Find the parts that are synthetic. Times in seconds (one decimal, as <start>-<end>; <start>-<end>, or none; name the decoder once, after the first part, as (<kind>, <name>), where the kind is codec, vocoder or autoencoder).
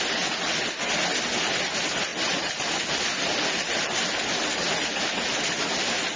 none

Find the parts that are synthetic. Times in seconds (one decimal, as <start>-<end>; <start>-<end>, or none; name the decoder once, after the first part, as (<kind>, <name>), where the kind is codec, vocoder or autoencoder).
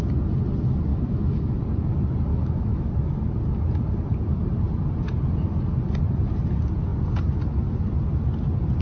0.9-1.5 (autoencoder, DAC-VAE); 2.3-2.9